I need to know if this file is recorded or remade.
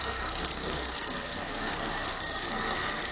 remade